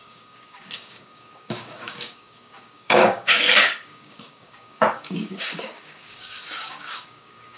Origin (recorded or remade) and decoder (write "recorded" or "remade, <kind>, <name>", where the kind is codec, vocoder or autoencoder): remade, codec, DAC